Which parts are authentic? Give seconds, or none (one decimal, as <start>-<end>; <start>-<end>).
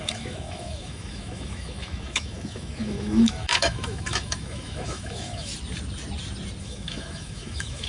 5.5-6.6